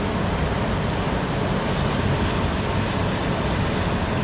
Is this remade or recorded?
recorded